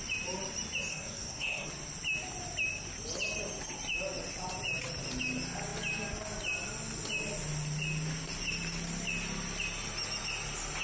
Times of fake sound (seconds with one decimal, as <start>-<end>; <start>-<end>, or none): 0.9-1.7